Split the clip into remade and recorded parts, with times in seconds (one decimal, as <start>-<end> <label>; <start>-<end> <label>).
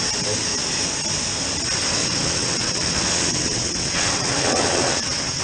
0.0-2.0 recorded; 2.0-5.4 remade